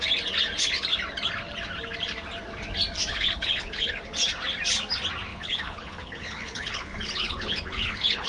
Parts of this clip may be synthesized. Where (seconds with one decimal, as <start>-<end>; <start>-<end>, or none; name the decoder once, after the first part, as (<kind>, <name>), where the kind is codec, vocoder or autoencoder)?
3.1-4.0 (codec, HILCodec); 5.3-8.3